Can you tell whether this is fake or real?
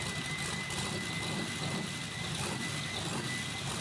real